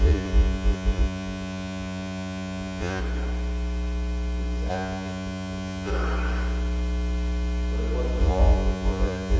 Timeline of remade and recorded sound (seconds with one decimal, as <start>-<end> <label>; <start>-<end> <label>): 0.0-3.0 remade; 3.0-4.7 recorded; 4.7-5.9 remade; 5.9-8.2 recorded; 8.2-9.4 remade